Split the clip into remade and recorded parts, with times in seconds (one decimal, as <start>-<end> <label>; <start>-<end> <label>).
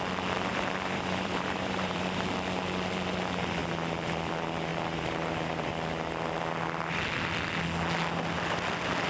0.0-0.5 recorded; 0.5-2.3 remade; 2.3-4.7 recorded; 4.7-5.7 remade; 5.7-9.1 recorded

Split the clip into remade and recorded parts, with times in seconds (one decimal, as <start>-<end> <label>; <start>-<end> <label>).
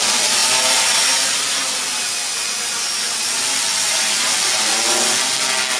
0.0-5.8 recorded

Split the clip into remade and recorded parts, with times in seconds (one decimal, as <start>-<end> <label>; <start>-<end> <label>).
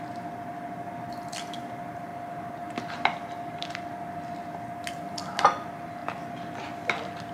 0.0-7.3 recorded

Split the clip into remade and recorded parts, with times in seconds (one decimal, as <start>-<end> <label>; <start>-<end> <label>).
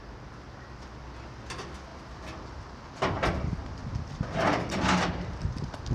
0.0-5.9 recorded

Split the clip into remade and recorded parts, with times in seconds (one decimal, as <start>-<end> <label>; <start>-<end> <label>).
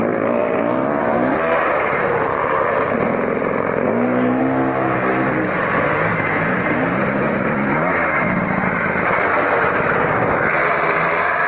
0.0-3.4 recorded; 3.4-4.4 remade; 4.4-6.1 recorded; 6.1-9.9 remade; 9.9-10.6 recorded; 10.6-11.5 remade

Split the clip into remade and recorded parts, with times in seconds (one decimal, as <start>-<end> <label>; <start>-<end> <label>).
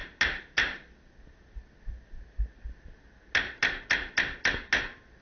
0.0-5.2 recorded